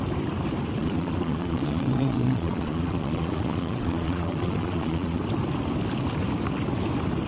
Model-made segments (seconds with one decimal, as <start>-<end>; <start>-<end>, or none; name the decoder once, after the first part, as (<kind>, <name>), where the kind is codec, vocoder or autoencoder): 0.8-5.2 (vocoder, Vocos)